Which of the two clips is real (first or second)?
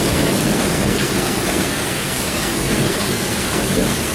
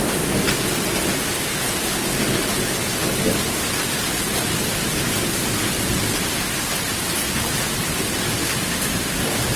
second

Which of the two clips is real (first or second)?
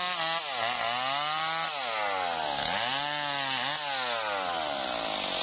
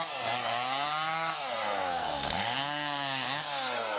first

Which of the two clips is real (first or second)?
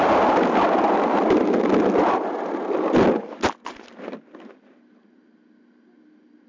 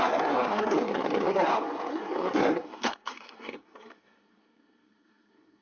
first